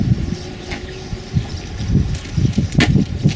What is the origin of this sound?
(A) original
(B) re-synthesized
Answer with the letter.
A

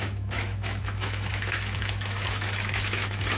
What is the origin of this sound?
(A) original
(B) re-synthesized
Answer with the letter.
B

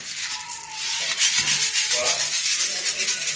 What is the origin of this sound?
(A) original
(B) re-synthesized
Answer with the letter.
A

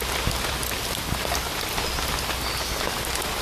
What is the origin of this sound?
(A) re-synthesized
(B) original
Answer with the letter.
B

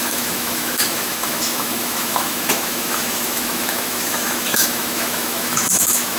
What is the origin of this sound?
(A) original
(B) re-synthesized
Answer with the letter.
B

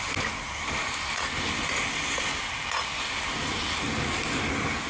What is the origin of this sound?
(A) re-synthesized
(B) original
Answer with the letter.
B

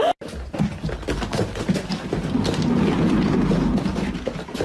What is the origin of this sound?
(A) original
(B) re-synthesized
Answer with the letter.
A